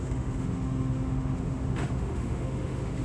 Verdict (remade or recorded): remade